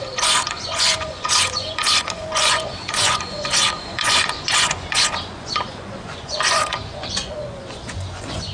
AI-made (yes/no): yes